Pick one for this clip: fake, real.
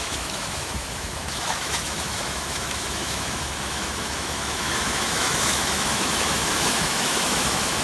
fake